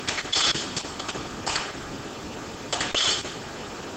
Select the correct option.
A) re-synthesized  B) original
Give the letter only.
B